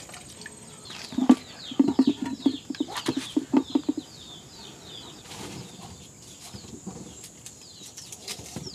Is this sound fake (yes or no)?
no